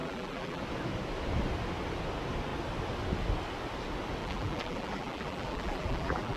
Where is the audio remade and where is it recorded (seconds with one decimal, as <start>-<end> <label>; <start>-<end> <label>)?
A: 0.0-0.6 remade; 0.6-4.2 recorded; 4.2-6.4 remade